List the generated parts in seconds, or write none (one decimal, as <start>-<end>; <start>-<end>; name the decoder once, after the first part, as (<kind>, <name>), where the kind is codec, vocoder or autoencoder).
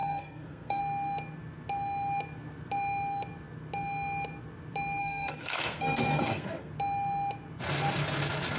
0.0-0.8 (codec, SNAC); 5.0-6.7